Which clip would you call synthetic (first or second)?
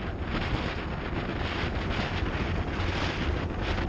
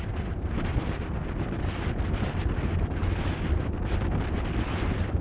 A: second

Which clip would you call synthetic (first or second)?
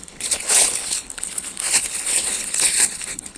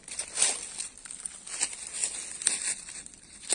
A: first